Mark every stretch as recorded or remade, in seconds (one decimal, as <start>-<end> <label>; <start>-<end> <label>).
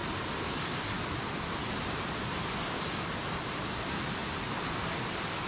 0.0-5.5 recorded